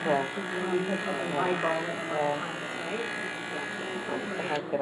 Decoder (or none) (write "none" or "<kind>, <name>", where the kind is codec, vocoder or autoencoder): none